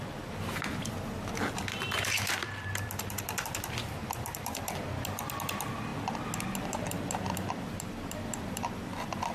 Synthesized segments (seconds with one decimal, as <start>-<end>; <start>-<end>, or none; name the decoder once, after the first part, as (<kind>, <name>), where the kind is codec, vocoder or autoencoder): 0.0-5.9 (vocoder, BigVGAN v2); 6.6-9.3